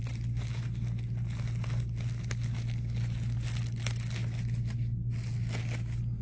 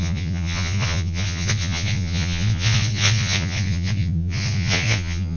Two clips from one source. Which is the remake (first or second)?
second